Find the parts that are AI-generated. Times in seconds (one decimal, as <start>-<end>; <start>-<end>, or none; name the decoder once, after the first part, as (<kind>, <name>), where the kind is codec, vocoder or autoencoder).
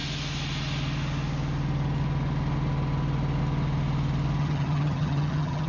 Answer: 4.4-5.7 (vocoder, HiFi-GAN)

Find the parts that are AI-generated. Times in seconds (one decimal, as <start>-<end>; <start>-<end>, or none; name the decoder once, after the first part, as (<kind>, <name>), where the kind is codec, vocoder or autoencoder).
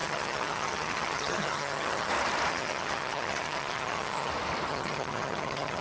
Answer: 0.0-2.1 (vocoder, HiFi-GAN); 2.5-4.3; 4.7-5.8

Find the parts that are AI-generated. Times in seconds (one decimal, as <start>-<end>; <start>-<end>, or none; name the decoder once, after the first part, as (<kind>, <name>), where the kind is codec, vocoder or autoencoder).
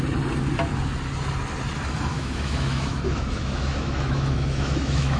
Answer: 2.1-5.2 (autoencoder, DAC-VAE)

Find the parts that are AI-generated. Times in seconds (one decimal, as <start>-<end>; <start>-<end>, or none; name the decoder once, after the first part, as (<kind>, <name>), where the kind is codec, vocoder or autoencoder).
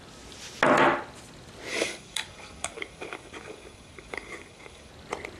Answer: 1.7-4.9 (codec, DAC)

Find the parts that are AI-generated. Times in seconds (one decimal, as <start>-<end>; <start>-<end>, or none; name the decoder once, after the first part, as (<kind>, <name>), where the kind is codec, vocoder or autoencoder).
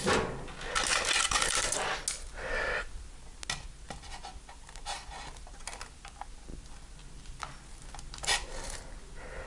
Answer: none